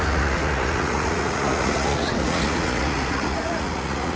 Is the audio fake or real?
fake